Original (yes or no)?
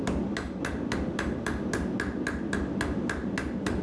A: yes